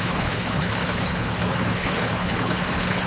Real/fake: fake